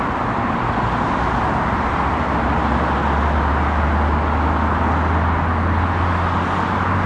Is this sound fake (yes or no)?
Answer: no